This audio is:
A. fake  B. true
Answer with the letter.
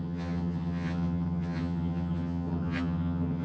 A